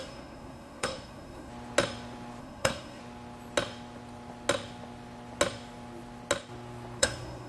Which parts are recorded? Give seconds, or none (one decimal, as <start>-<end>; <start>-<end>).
1.5-2.4; 3.0-7.0